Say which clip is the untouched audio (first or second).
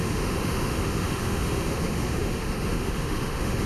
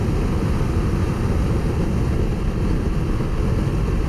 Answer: second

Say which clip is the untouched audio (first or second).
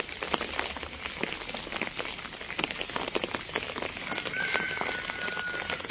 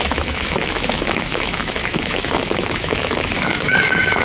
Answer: first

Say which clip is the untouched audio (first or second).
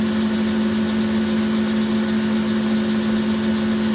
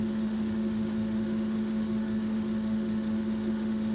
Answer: first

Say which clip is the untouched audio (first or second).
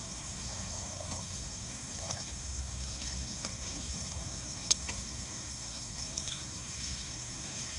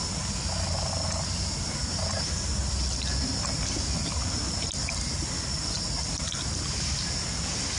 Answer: second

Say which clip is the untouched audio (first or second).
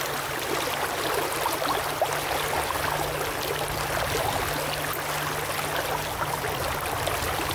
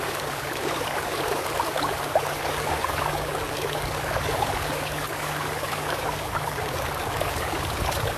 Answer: first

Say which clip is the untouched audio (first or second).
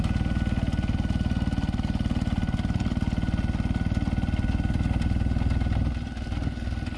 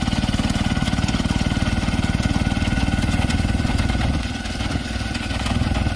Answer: first